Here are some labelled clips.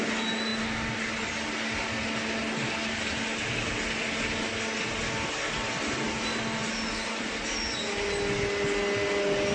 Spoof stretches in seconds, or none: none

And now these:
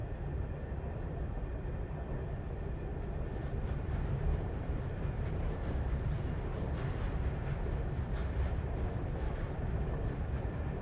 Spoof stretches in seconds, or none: 3.4-7.4 (vocoder, BigVGAN v2); 8.2-9.0

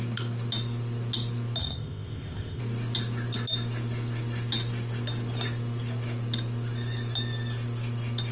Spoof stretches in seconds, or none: 1.6-2.6 (codec, ZipCodec)

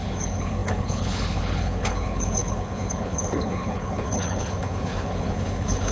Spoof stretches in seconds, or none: 0.0-5.9 (codec, HILCodec)